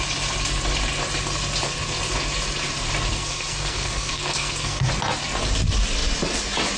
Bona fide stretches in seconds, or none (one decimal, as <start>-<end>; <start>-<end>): 0.0-3.1; 4.9-6.8